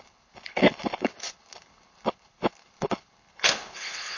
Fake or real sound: fake